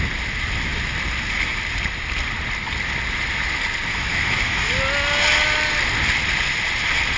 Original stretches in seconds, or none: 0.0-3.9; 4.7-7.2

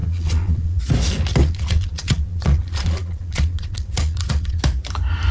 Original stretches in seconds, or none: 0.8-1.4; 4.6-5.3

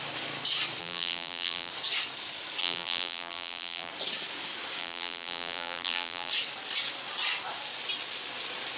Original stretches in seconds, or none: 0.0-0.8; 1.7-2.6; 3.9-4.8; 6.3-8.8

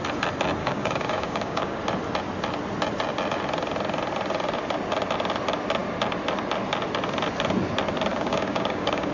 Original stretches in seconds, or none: 0.0-0.6; 1.8-8.1

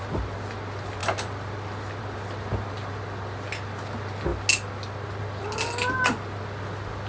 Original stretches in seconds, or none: 0.0-7.1